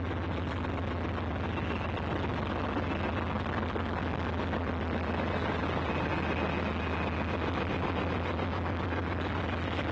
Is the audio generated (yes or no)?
no